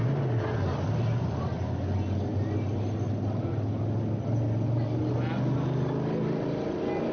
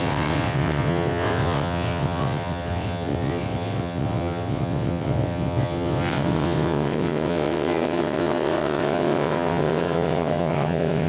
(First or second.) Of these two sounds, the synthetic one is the second